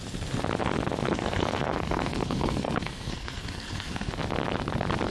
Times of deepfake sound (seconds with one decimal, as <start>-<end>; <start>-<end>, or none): 1.0-4.1